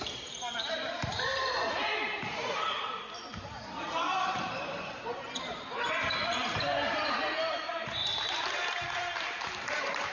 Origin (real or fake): fake